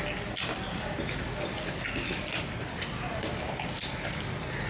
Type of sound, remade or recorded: recorded